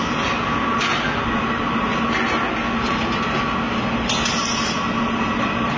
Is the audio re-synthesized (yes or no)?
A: no